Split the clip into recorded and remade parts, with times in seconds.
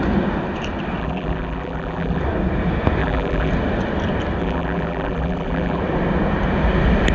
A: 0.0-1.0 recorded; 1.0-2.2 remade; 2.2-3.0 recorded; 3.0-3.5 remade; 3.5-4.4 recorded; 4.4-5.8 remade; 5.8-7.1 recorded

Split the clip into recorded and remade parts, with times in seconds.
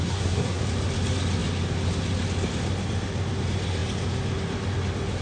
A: 0.0-0.6 remade; 0.6-5.2 recorded